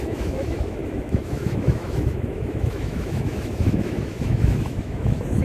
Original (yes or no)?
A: no